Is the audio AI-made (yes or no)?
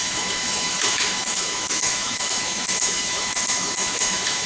yes